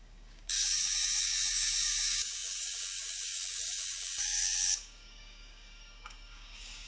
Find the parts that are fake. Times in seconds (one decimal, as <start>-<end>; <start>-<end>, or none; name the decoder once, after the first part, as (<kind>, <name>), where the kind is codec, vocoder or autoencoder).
0.0-6.9 (codec, DAC)